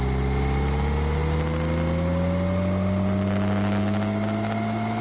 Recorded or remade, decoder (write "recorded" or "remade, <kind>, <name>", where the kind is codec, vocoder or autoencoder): recorded